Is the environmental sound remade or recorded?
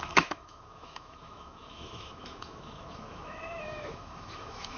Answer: remade